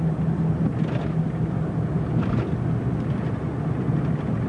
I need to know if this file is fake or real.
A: real